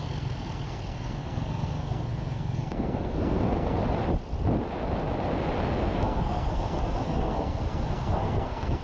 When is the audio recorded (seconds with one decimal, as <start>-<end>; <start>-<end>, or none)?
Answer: 3.8-5.8